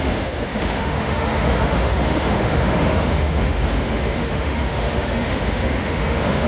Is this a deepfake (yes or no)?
yes